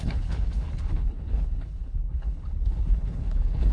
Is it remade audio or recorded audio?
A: remade